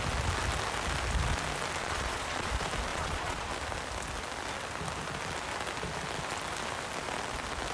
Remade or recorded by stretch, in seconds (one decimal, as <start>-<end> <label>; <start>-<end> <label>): 0.0-1.8 recorded; 1.8-2.5 remade; 2.5-2.9 recorded; 2.9-3.5 remade; 3.5-7.7 recorded